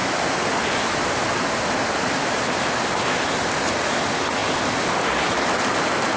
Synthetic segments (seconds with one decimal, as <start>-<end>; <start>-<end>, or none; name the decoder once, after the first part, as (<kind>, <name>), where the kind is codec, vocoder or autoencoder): none